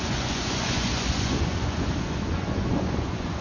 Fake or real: fake